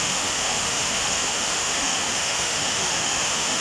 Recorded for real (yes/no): no